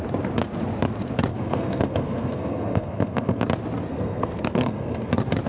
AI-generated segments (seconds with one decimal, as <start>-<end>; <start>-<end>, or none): 1.3-3.4; 3.9-5.1